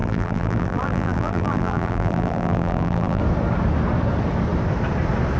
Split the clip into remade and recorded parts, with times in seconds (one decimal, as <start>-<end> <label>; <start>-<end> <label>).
0.0-3.2 remade; 3.2-5.4 recorded